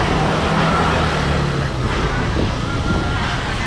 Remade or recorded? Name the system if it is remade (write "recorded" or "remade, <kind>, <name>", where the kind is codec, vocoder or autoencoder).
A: recorded